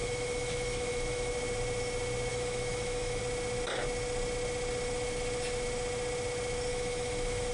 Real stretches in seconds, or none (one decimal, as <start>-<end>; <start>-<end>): 1.3-2.3; 3.2-6.7